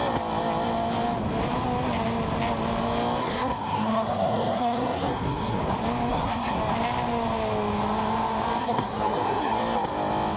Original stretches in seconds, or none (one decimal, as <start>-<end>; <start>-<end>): 0.0-3.2; 5.6-6.1; 6.6-8.6; 9.6-10.4